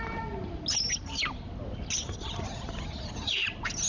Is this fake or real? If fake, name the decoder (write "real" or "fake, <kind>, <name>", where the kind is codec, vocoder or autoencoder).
real